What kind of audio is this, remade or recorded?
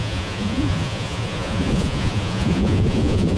remade